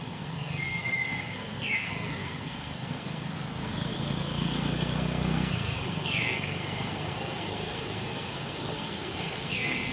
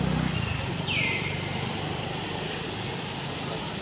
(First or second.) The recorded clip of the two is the second